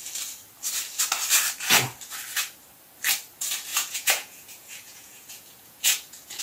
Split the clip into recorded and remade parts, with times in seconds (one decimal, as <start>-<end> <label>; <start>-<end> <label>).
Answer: 0.0-3.7 recorded; 3.7-6.4 remade